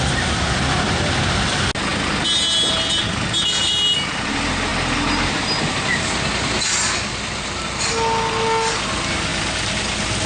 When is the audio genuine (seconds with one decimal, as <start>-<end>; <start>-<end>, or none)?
0.0-10.3